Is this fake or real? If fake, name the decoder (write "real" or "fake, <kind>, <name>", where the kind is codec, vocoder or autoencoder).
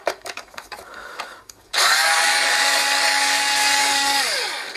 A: fake, codec, DAC